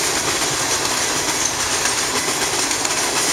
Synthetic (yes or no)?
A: no